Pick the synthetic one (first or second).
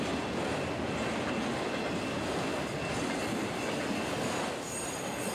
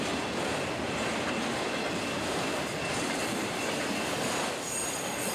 second